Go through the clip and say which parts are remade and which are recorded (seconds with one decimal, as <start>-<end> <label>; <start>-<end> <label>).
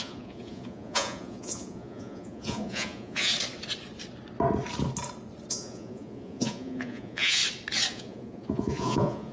0.0-3.3 remade; 3.3-5.5 recorded; 5.5-7.4 remade; 7.4-7.9 recorded; 7.9-9.3 remade